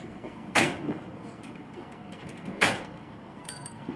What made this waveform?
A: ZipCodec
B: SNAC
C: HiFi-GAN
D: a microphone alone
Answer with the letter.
B